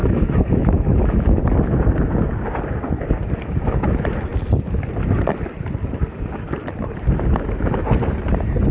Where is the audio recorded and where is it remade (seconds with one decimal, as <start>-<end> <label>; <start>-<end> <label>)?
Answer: 0.0-1.4 remade; 1.4-8.7 recorded